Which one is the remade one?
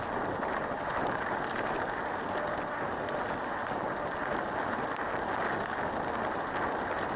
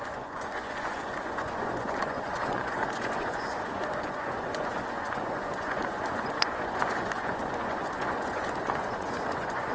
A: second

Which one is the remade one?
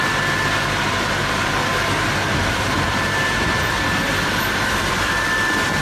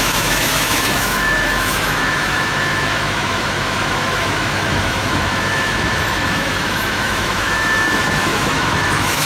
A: second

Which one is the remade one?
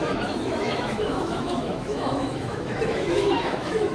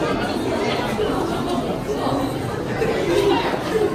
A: first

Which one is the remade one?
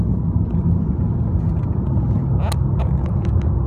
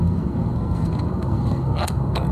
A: second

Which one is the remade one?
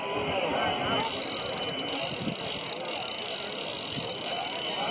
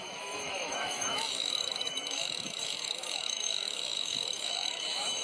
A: second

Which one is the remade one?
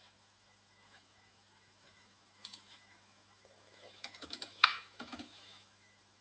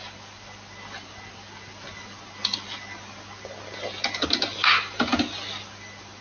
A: first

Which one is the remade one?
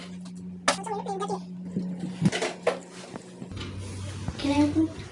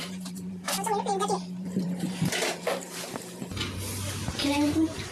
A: second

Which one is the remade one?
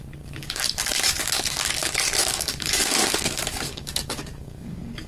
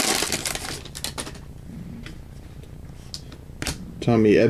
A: first